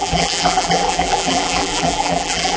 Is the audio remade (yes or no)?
yes